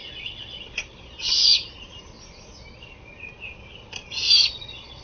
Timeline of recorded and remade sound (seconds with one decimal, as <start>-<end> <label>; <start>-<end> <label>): 0.0-1.5 remade; 1.5-4.5 recorded; 4.5-5.0 remade